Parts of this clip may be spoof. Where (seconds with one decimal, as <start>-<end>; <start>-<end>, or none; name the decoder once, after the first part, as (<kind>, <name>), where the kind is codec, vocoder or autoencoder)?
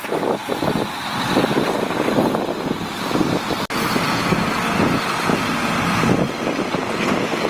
none